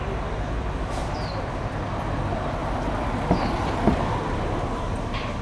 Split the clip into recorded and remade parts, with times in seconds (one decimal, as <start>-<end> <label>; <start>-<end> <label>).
0.0-1.0 recorded; 1.0-1.5 remade; 1.5-5.4 recorded